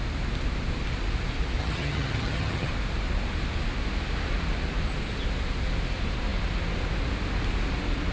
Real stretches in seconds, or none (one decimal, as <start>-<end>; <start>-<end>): 0.0-1.6; 2.7-8.1